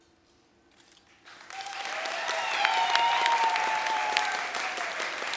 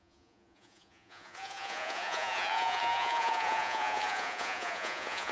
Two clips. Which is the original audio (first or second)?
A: first